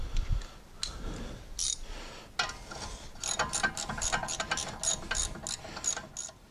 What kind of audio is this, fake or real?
real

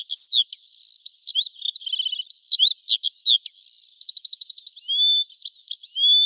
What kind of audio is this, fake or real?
real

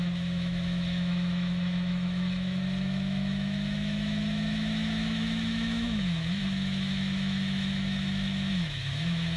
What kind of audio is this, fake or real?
fake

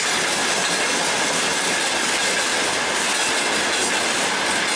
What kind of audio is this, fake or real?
real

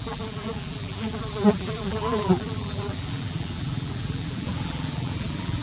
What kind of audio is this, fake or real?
fake